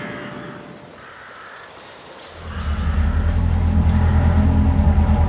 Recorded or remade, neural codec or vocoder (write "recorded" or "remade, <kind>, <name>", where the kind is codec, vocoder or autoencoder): recorded